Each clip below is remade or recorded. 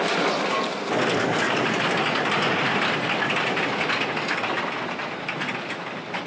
recorded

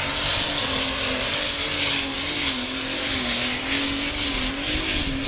recorded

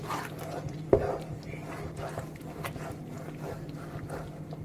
recorded